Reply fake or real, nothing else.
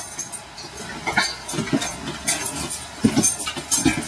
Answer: real